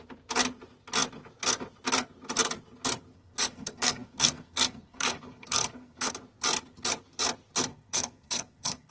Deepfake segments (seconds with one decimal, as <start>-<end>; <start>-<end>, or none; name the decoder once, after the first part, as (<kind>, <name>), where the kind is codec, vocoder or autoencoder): 3.1-6.1 (codec, SNAC); 7.7-8.9